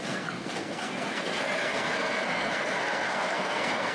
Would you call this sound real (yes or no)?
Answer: no